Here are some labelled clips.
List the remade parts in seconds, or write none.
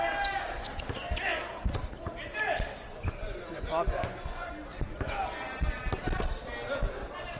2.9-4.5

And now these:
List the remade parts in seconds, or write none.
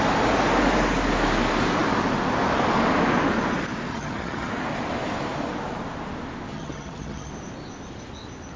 3.9-4.5; 6.5-7.3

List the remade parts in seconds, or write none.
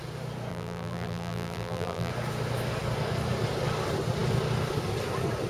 0.5-2.1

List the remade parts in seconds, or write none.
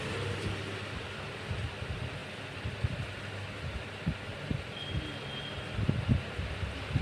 none